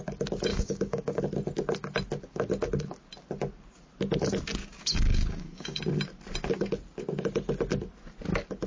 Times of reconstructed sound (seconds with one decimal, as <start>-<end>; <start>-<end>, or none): 0.5-1.2; 4.6-5.8